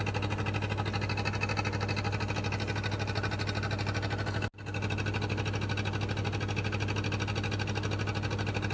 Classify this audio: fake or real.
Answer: real